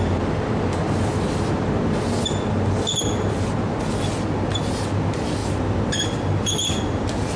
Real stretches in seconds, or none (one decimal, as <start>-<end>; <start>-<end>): 0.0-7.4